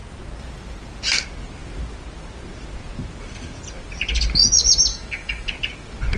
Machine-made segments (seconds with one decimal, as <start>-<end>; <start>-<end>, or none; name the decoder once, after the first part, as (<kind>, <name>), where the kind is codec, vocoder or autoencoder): 4.9-5.5 (autoencoder, DAC-VAE)